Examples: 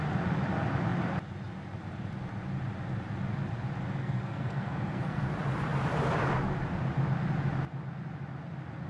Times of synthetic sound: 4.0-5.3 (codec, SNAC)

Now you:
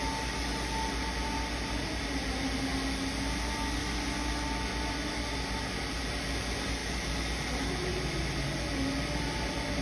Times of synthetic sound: none

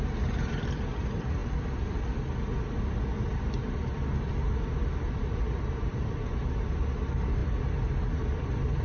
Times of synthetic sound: none

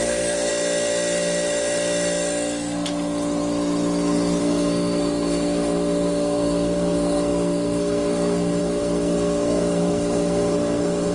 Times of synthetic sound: 0.0-0.5 (codec, SNAC); 4.4-11.1

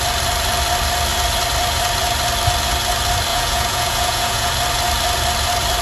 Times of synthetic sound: 3.3-4.5 (vocoder, Vocos)

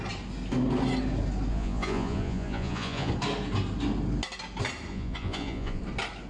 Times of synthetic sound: 1.5-3.1 (vocoder, Vocos); 4.9-5.8

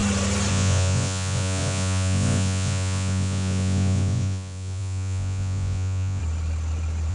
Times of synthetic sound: 0.5-6.2 (vocoder, Vocos)